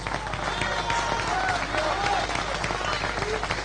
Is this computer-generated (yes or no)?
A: no